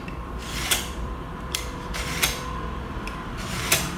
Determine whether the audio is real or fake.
fake